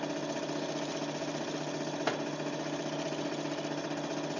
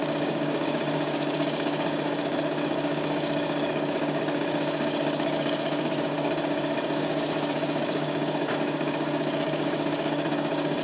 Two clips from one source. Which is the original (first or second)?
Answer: first